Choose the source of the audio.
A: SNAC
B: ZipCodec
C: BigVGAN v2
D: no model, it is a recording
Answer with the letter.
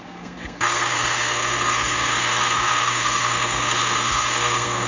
A